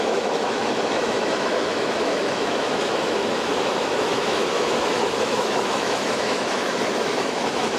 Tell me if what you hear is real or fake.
fake